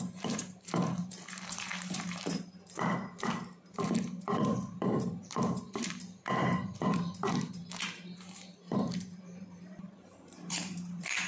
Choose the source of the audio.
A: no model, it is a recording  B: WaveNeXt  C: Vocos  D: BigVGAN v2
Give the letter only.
D